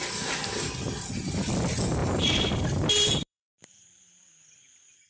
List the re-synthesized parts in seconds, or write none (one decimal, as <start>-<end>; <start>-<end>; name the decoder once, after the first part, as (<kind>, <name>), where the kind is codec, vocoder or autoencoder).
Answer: 2.0-4.2 (vocoder, BigVGAN v2)